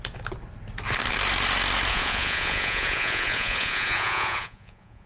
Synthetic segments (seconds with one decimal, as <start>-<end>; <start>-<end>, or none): 1.9-5.1